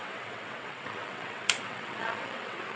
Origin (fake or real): fake